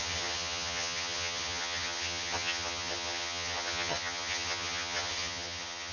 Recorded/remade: remade